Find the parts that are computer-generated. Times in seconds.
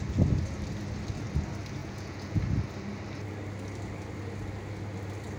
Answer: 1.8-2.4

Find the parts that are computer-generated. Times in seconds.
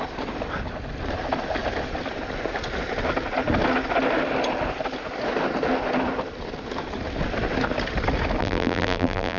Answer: 8.4-9.4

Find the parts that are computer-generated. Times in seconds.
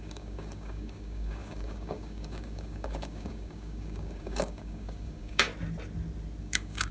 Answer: 0.0-5.5; 6.4-6.9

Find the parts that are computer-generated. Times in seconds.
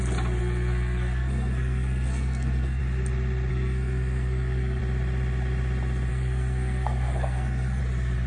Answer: 0.4-2.8; 3.5-4.8; 6.1-7.8